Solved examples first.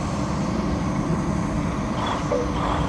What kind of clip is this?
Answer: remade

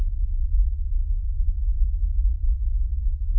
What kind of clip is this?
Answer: remade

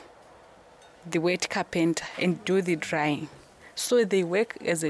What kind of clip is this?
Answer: recorded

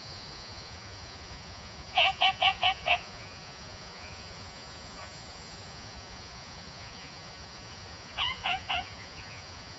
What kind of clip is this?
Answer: remade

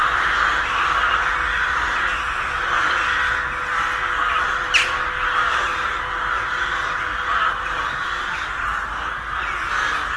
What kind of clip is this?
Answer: recorded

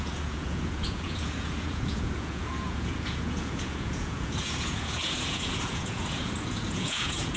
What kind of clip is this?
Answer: remade